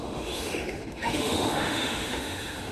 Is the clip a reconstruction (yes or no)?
yes